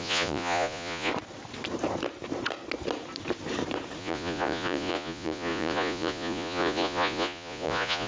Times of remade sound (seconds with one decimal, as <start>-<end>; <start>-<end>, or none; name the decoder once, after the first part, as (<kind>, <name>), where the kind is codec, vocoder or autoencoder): 0.0-1.1 (vocoder, Vocos); 4.0-8.1